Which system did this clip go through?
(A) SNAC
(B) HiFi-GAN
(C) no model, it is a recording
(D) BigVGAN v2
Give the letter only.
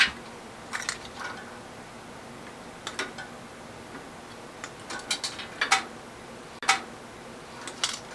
C